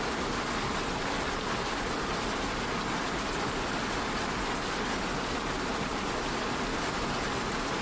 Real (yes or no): yes